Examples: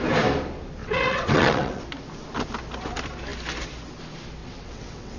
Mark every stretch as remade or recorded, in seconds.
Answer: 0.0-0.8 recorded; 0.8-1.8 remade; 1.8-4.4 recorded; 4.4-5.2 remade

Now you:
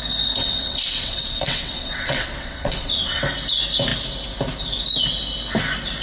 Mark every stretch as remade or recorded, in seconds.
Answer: 0.0-0.4 recorded; 0.4-3.2 remade; 3.2-6.0 recorded

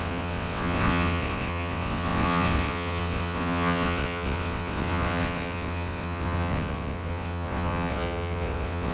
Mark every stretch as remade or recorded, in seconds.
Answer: 0.0-8.9 remade

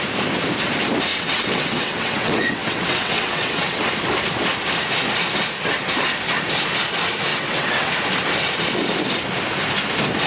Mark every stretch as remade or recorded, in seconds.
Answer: 0.0-1.1 recorded; 1.1-3.9 remade; 3.9-7.3 recorded; 7.3-7.9 remade; 7.9-10.3 recorded

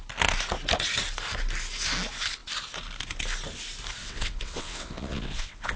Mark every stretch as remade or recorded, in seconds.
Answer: 0.0-4.0 recorded; 4.0-5.8 remade